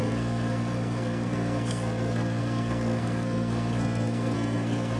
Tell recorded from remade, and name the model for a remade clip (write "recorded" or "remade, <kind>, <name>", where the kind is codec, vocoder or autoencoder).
remade, codec, SNAC